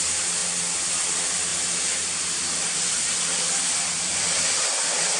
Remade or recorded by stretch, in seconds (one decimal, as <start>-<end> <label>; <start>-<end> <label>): 0.0-5.2 recorded